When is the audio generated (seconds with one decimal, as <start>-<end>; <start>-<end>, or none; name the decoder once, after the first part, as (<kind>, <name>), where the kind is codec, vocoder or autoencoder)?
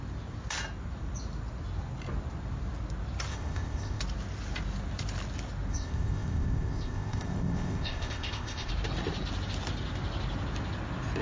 3.3-4.0 (codec, ZipCodec); 5.7-8.7